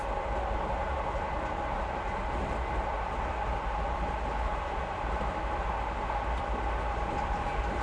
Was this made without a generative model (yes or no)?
yes